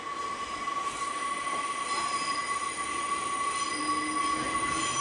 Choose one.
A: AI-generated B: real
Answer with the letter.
B